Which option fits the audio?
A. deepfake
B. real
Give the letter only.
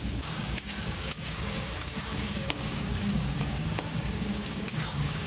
A